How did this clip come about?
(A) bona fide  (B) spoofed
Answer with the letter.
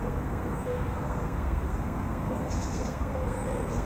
B